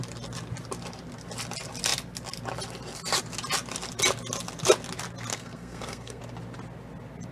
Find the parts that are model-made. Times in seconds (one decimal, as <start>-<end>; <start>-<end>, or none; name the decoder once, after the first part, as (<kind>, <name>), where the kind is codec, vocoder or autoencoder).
5.3-6.2 (codec, SNAC)